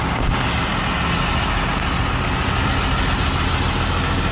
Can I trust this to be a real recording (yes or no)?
yes